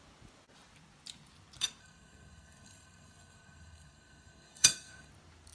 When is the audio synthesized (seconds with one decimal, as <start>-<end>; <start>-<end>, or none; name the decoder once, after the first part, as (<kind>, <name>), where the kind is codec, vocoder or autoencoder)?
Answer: 1.8-5.1 (codec, SNAC)